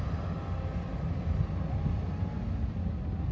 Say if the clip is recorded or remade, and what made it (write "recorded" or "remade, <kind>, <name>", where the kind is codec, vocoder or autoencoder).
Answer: recorded